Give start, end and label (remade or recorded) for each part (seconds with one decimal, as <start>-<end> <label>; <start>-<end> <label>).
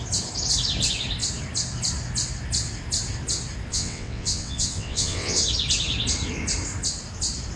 0.0-3.7 recorded; 3.7-5.4 remade; 5.4-7.6 recorded